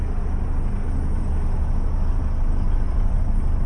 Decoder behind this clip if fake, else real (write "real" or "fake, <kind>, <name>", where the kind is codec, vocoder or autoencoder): fake, vocoder, BigVGAN v2